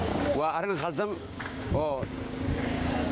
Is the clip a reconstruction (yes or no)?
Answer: yes